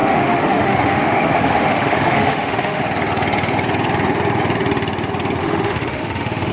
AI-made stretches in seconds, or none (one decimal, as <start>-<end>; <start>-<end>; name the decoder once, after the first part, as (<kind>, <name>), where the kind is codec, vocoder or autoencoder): 0.0-2.8 (autoencoder, DAC-VAE); 5.4-6.5